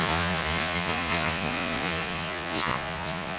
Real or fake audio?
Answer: fake